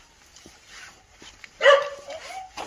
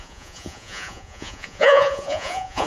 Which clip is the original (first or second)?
first